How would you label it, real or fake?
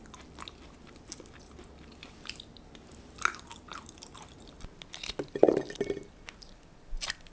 real